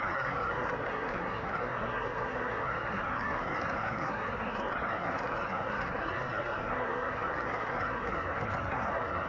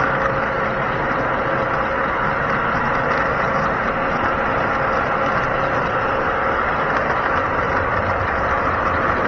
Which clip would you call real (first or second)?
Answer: second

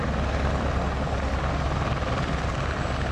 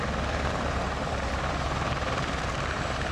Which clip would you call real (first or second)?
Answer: first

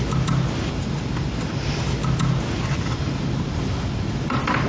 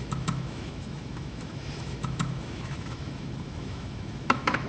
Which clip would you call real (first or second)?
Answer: first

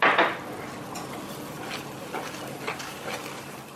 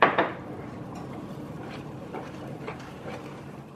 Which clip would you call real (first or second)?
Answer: first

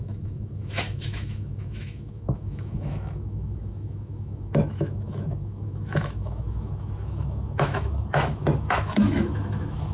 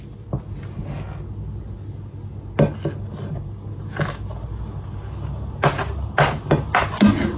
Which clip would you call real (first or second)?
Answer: second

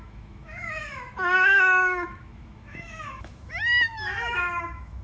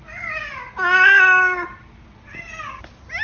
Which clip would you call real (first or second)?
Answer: second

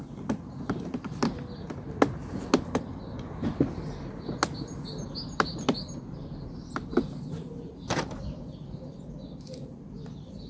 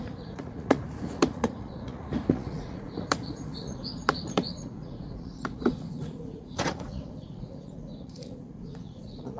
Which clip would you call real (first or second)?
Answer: first